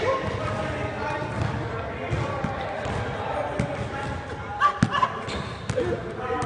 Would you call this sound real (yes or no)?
yes